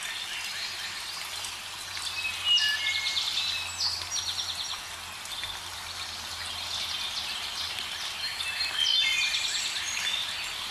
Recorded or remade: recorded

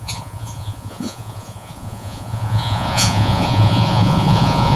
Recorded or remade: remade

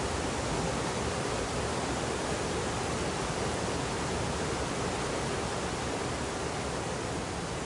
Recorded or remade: recorded